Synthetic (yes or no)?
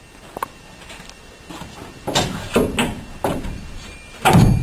no